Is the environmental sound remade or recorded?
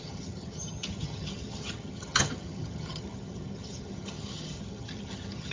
remade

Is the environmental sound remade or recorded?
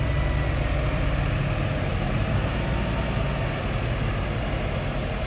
recorded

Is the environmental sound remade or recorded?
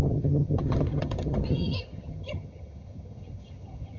remade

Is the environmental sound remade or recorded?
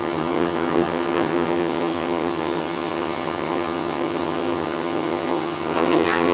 remade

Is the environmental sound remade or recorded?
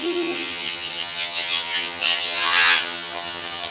remade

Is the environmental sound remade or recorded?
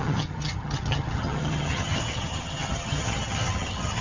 remade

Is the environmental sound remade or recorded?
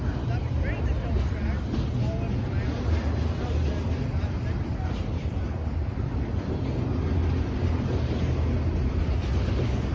recorded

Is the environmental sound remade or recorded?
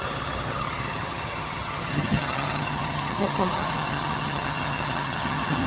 remade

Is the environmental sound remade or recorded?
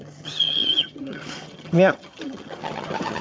remade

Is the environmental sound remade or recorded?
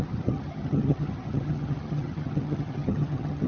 remade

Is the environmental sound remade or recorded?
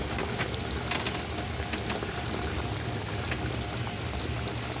recorded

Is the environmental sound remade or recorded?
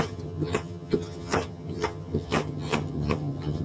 remade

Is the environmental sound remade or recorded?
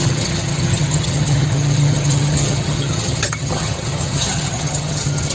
remade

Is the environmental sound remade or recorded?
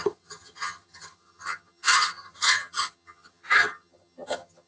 remade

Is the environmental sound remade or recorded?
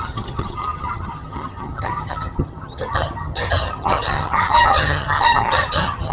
remade